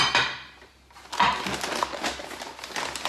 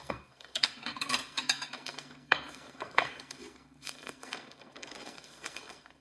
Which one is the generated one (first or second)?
second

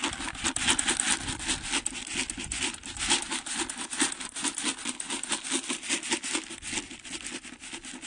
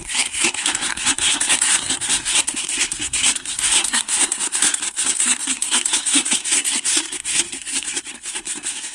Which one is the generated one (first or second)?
second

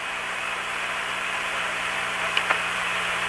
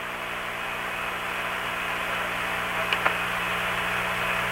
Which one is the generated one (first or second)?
first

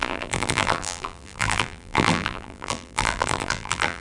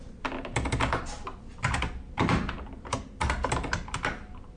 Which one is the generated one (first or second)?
first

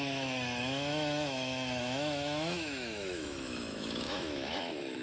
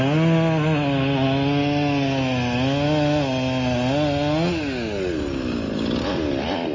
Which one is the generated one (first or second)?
first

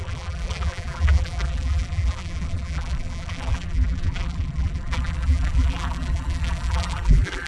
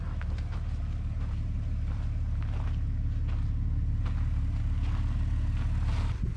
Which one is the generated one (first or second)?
first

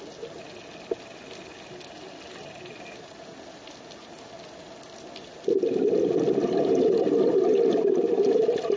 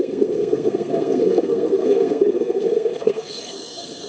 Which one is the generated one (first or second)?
second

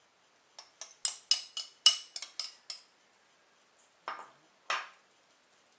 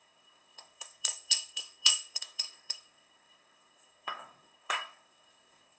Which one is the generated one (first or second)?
second